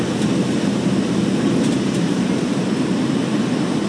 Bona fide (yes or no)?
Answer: yes